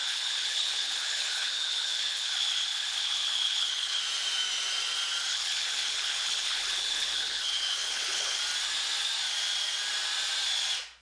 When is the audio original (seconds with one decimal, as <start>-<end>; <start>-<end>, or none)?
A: 4.0-5.3; 8.4-11.0